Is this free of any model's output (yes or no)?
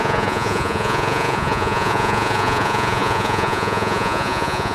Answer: no